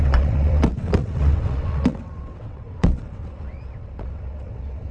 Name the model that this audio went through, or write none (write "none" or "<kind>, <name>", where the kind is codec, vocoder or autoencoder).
vocoder, WaveNeXt